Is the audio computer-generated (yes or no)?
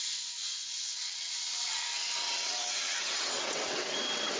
yes